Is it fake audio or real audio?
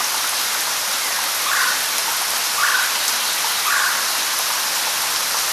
real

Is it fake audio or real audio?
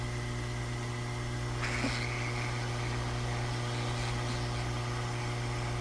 real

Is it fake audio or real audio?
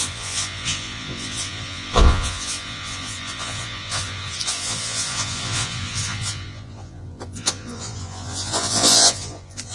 fake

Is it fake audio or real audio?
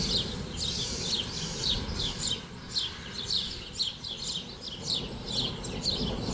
real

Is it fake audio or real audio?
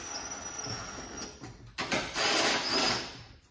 real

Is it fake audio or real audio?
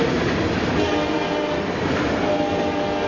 real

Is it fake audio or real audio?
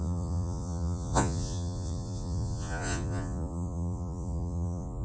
fake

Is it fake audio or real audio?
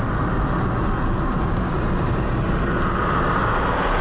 real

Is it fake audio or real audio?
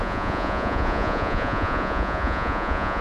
fake